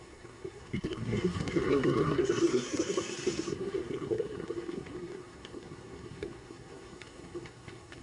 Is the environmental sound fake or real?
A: fake